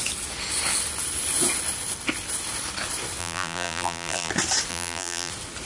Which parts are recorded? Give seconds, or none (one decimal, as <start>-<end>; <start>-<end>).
0.0-3.2; 4.3-4.7; 5.3-5.7